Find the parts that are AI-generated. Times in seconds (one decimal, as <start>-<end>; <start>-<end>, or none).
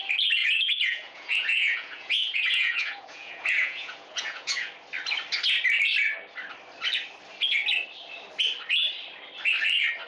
0.4-4.7